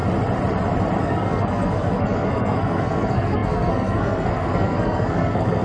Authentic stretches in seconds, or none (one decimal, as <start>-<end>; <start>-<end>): 0.0-1.0